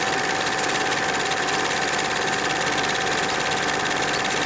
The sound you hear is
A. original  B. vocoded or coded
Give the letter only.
A